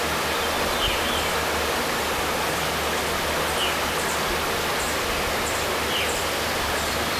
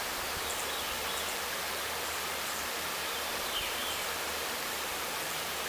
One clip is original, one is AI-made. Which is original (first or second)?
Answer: first